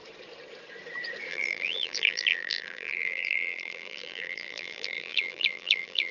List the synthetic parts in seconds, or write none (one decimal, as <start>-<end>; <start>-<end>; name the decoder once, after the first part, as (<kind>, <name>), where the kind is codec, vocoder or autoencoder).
1.3-6.1 (vocoder, BigVGAN v2)